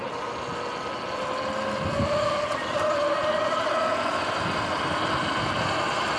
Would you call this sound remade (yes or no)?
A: no